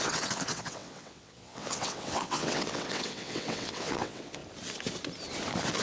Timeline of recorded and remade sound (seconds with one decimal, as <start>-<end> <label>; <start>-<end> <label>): 0.0-4.4 remade; 4.4-5.8 recorded